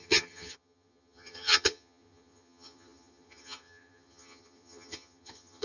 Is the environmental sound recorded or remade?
remade